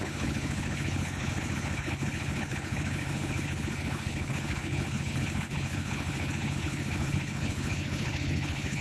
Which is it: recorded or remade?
remade